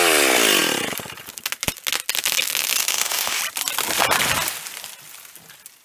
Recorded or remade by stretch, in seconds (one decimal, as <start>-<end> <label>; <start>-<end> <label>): 0.0-2.8 recorded; 2.8-3.4 remade; 3.4-5.8 recorded